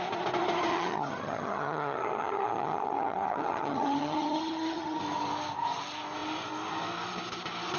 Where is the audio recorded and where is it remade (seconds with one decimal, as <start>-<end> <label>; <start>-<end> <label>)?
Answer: 0.0-0.7 recorded; 0.7-5.0 remade; 5.0-7.8 recorded